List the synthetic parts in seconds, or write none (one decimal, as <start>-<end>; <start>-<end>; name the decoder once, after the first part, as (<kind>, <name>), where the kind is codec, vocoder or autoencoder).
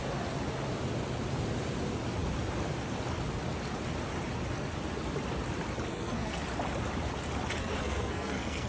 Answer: 5.9-6.4 (codec, SNAC); 7.6-8.7